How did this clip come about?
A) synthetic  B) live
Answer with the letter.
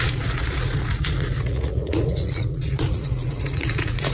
A